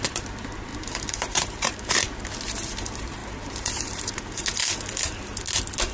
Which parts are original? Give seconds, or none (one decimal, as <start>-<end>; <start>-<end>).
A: 0.0-0.7; 2.2-3.2; 4.4-5.9